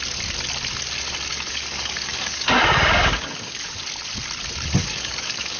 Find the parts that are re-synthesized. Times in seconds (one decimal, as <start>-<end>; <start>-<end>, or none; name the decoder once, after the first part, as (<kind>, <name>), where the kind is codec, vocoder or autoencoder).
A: 1.3-3.8 (codec, DAC); 4.8-5.6